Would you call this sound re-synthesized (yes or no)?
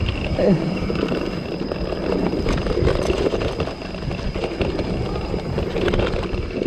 no